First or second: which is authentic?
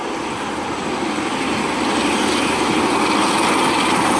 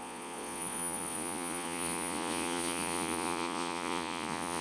first